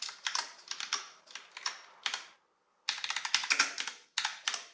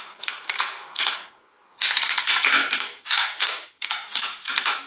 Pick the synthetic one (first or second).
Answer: second